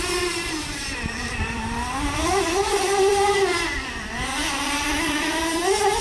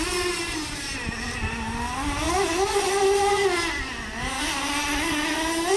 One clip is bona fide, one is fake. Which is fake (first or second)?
first